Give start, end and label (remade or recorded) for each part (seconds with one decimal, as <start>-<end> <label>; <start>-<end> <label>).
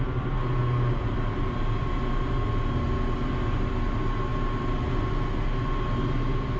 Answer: 0.0-6.6 recorded